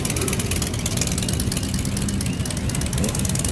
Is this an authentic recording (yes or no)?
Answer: yes